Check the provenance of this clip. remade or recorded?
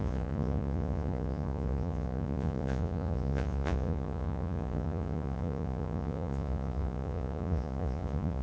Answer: remade